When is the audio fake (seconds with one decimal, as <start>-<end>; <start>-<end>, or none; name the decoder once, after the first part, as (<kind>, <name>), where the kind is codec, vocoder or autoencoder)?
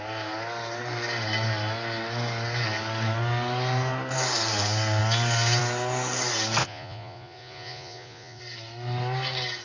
6.6-8.4 (vocoder, Vocos)